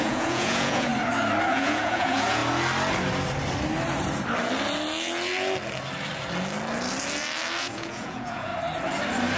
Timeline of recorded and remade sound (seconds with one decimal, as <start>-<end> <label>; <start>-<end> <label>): 0.0-0.9 remade; 0.9-1.5 recorded; 1.5-2.4 remade; 2.4-7.6 recorded; 7.6-8.5 remade; 8.5-9.4 recorded